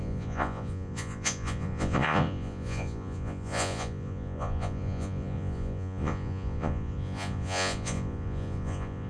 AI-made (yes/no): yes